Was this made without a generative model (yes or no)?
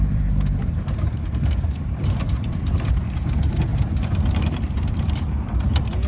no